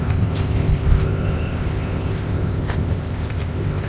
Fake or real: fake